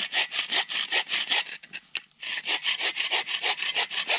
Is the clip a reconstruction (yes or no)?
no